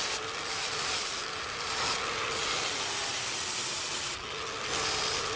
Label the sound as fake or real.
real